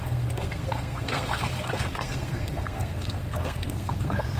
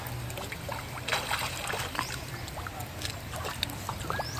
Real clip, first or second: second